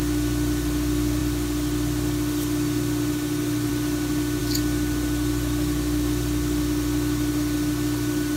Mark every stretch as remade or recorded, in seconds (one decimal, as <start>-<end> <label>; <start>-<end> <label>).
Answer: 0.0-8.4 recorded

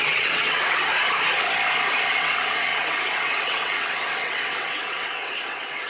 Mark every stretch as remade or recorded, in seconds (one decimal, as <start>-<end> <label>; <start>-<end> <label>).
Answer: 0.0-0.9 remade; 0.9-2.1 recorded; 2.1-5.9 remade

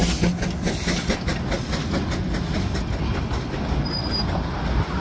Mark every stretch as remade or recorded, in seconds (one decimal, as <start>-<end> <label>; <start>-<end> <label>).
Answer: 0.0-5.0 recorded